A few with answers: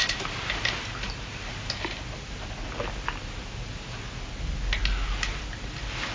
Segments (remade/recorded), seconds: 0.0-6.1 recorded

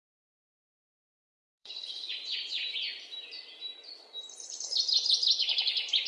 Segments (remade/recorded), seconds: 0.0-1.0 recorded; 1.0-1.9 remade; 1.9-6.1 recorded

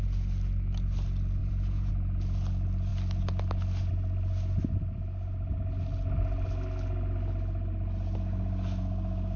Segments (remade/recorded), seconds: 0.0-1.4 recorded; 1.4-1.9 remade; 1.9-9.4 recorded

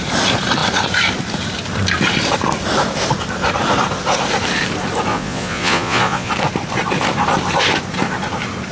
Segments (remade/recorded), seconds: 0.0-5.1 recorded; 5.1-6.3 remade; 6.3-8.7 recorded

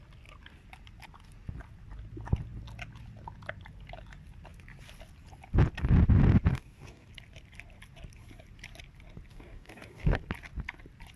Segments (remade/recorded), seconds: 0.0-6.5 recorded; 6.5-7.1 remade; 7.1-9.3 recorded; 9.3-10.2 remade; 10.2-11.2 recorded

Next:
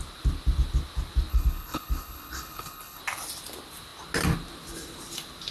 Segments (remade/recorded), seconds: 0.0-1.3 recorded; 1.3-3.0 remade; 3.0-5.5 recorded